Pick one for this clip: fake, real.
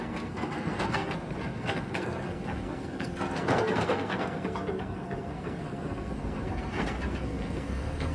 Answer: fake